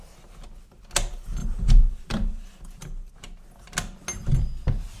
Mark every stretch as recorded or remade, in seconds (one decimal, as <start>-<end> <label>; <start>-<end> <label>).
0.0-1.4 recorded; 1.4-3.1 remade; 3.1-5.0 recorded